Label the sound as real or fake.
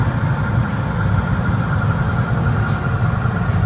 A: real